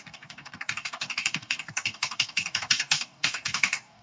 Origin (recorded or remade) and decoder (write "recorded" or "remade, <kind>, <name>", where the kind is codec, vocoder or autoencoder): remade, codec, DAC